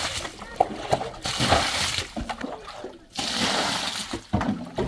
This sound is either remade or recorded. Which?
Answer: recorded